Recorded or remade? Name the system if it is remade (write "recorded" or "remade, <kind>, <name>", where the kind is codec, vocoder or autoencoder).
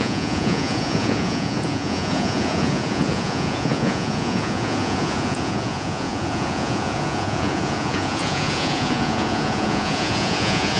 remade, vocoder, Vocos